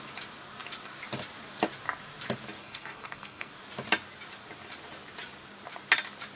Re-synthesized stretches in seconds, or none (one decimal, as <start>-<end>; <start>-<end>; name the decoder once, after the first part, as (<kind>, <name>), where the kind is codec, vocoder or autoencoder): 2.6-3.5 (codec, SNAC)